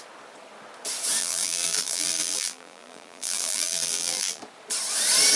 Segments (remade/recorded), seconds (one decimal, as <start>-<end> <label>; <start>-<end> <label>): 0.0-1.2 recorded; 1.2-4.4 remade; 4.4-5.4 recorded